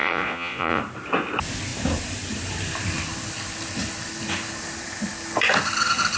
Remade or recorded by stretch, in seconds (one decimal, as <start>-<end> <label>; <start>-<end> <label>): 0.0-0.8 remade; 0.8-6.2 recorded